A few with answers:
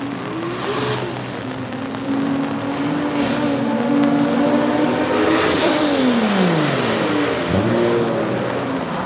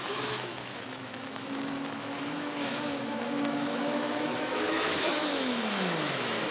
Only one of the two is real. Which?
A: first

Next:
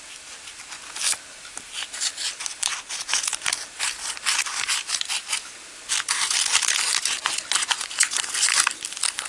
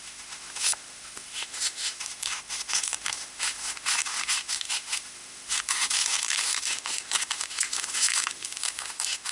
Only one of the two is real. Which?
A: first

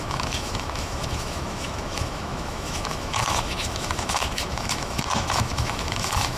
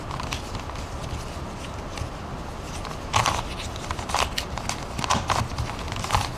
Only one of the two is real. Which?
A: second